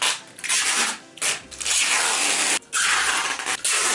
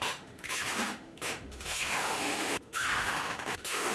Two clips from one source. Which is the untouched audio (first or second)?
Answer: first